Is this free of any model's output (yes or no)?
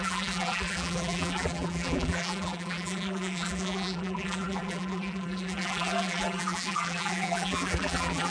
no